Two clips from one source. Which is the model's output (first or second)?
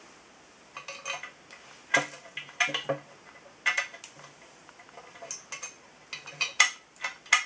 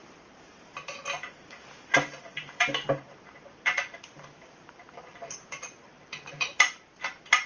second